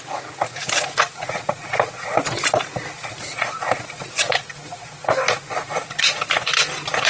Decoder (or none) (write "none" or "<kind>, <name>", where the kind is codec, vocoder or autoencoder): none